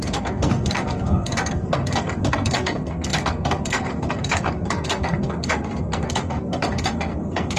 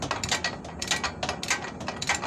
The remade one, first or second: first